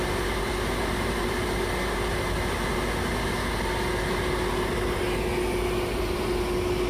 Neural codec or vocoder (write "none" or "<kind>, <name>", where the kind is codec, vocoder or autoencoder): none